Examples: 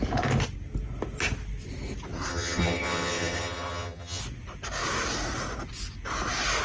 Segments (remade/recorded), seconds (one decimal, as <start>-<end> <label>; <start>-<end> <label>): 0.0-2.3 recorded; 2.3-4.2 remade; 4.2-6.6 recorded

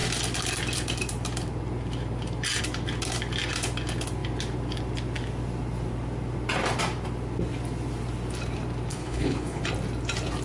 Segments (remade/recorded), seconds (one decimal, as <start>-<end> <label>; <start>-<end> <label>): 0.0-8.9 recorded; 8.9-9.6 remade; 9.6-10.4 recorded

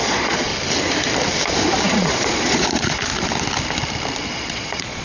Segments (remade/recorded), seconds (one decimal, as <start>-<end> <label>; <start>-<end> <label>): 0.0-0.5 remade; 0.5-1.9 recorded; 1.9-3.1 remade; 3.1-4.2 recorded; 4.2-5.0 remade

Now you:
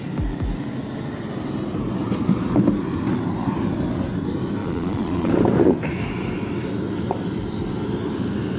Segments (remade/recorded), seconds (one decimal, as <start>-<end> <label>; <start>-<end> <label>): 0.0-4.6 recorded; 4.6-5.3 remade; 5.3-8.6 recorded